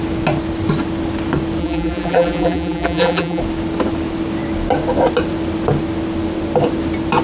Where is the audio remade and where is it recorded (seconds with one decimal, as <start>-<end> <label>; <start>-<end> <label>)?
0.0-1.6 recorded; 1.6-3.4 remade; 3.4-7.2 recorded